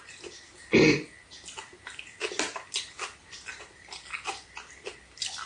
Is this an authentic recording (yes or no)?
yes